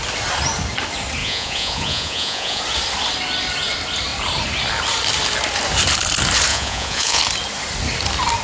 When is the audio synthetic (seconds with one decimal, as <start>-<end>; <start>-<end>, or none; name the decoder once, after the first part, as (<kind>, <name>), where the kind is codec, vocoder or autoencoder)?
1.2-2.6 (vocoder, Vocos); 6.5-7.2